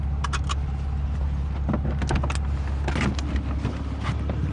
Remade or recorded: recorded